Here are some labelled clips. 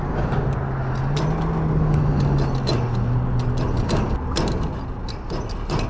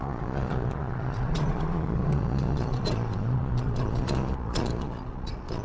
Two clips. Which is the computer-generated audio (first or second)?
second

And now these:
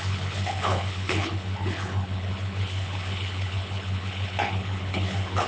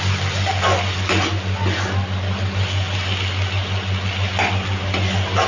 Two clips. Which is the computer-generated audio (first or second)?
first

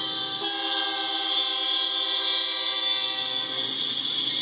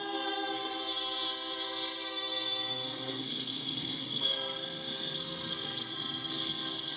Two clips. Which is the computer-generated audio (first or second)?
second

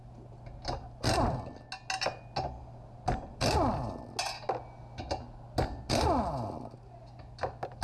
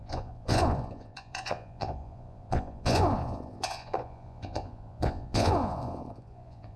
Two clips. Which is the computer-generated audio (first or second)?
second